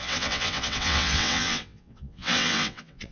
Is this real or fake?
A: fake